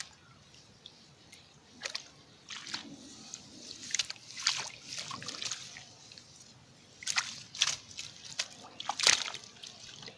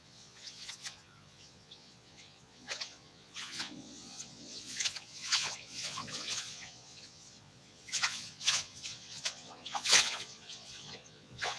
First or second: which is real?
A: first